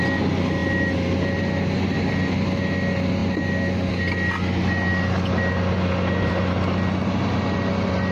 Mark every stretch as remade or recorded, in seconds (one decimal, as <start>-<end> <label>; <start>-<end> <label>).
0.0-8.1 recorded